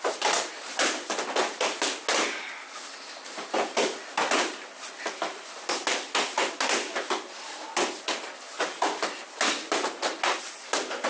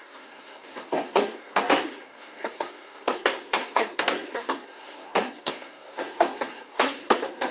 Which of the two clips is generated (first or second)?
second